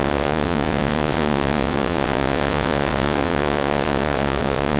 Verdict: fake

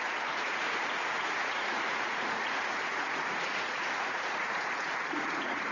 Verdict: fake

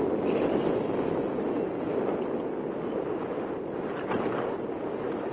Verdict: real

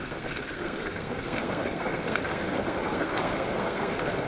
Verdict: fake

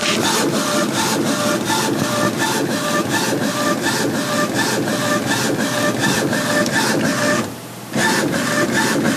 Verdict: real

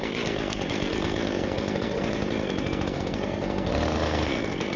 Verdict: fake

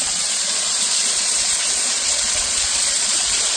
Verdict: fake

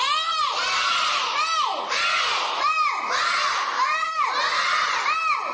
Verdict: real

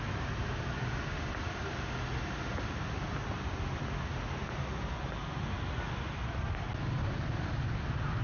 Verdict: real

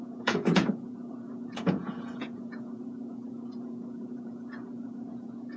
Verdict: fake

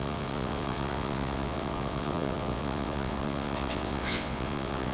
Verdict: fake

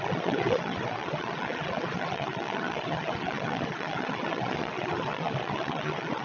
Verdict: fake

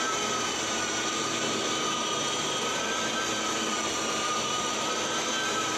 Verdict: fake